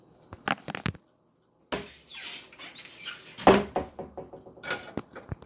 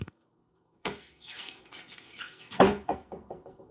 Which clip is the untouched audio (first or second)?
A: first